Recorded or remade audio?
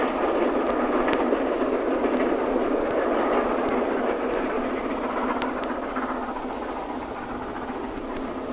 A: recorded